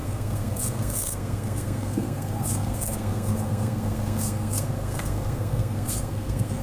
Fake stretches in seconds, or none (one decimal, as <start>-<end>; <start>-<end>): 0.0-6.6